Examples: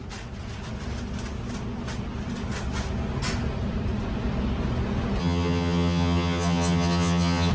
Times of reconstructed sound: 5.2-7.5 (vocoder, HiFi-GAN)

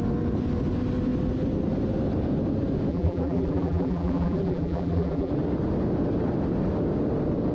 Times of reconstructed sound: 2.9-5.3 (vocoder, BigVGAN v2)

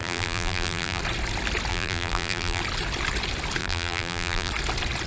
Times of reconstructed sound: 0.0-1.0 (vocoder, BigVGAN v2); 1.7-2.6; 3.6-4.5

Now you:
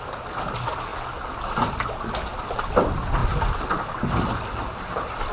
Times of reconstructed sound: none

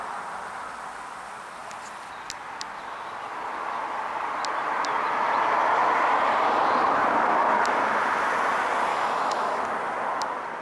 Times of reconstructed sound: 8.9-9.6 (autoencoder, DAC-VAE)

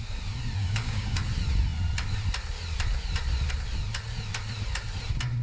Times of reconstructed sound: 0.6-1.2 (codec, DAC)

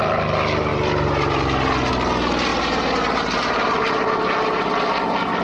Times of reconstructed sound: 0.7-1.9 (vocoder, BigVGAN v2); 2.5-3.9